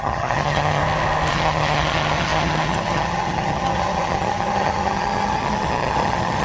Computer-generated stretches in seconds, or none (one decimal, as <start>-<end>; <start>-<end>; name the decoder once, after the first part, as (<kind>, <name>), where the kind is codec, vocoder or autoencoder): 0.0-0.8 (vocoder, HiFi-GAN); 1.3-6.4